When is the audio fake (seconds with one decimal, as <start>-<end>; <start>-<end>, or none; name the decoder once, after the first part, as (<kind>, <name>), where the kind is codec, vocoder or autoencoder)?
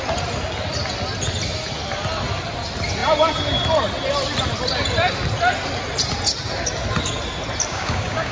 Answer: 7.7-8.3 (codec, DAC)